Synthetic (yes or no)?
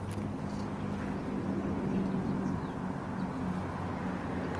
no